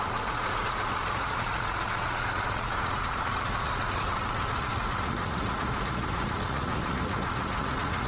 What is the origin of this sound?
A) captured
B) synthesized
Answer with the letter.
B